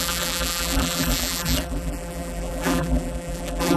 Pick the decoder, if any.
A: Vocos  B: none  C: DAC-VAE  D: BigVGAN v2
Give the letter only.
D